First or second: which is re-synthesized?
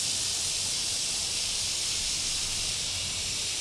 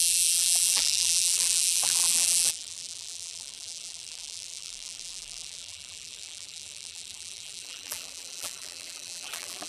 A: second